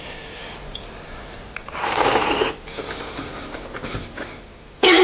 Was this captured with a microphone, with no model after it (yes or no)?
yes